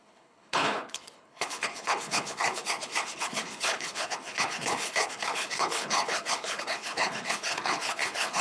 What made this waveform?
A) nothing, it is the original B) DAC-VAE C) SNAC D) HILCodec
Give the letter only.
D